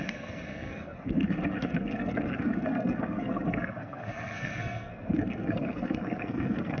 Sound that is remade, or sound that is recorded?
remade